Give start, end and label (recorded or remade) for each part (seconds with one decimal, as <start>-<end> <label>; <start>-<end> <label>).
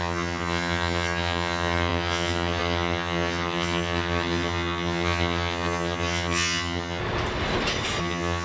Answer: 0.0-7.0 remade; 7.0-8.0 recorded; 8.0-8.4 remade